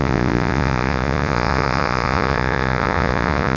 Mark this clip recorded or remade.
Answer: remade